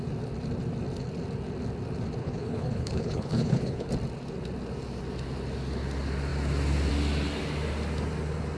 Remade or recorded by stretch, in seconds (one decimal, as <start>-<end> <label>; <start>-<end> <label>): 0.0-2.2 recorded; 2.2-3.9 remade; 3.9-8.6 recorded